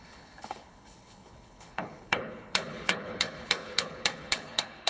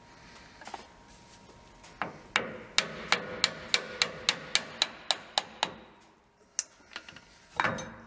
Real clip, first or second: second